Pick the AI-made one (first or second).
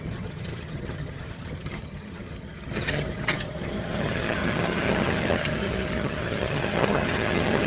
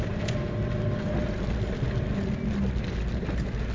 first